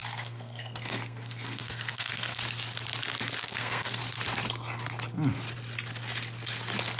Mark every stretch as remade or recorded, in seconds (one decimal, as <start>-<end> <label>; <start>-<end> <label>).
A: 0.0-2.4 remade; 2.4-3.4 recorded; 3.4-4.0 remade; 4.0-7.0 recorded